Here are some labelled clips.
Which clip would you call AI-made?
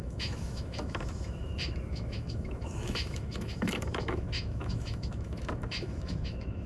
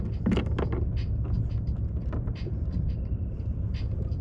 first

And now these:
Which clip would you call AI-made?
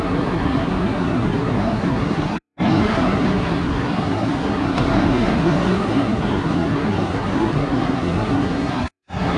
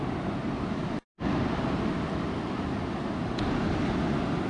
first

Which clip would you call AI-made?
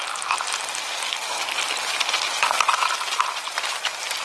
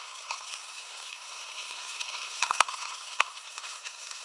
second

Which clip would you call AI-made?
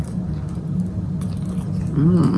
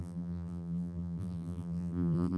second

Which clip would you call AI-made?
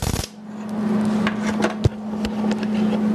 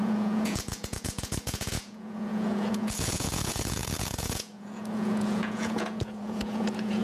second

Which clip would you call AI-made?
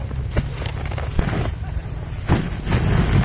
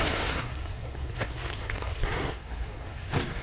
second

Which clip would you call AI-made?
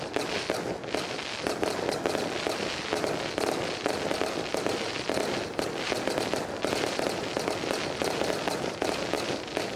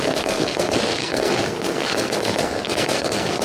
second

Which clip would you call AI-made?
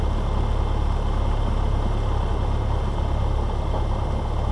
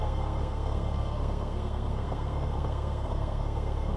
second